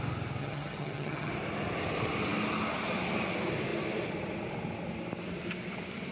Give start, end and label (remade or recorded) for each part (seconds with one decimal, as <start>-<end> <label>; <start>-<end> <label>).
0.0-0.4 recorded; 0.4-1.3 remade; 1.3-6.1 recorded